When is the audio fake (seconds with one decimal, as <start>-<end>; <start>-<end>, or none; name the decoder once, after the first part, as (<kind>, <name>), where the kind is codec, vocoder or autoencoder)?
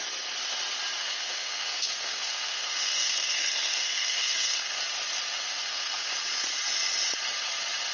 1.0-4.8 (codec, SNAC); 5.6-6.1